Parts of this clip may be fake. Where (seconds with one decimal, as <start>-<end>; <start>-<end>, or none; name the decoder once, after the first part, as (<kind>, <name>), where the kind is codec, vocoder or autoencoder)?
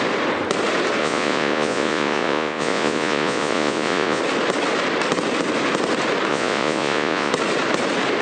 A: 1.0-4.2 (vocoder, Vocos); 6.3-7.3